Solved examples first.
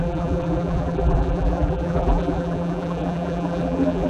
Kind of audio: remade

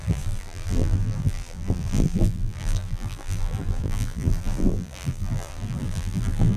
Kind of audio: remade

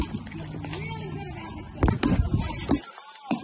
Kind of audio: recorded